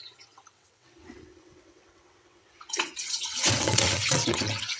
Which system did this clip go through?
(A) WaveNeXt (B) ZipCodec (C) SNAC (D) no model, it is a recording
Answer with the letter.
A